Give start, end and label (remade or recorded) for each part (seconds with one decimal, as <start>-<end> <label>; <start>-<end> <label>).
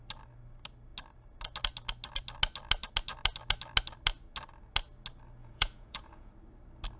0.0-5.4 recorded; 5.4-6.3 remade; 6.3-7.0 recorded